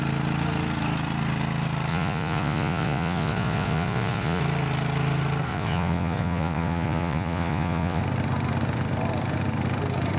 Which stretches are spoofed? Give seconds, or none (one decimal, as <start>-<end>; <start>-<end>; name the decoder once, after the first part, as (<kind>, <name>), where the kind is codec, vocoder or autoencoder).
1.9-4.4 (vocoder, Vocos); 5.5-8.0